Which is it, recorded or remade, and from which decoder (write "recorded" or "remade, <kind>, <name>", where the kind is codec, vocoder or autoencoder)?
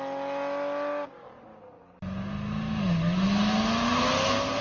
recorded